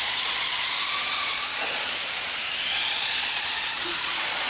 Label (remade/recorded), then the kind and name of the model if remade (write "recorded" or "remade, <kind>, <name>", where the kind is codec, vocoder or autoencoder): remade, vocoder, Vocos